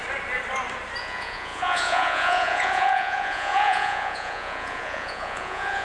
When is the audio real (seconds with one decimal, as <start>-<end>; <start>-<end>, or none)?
0.0-1.0